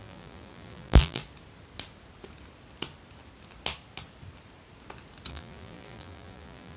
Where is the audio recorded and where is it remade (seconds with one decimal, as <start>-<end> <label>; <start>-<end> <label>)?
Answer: 0.0-1.2 remade; 1.2-5.3 recorded; 5.3-6.8 remade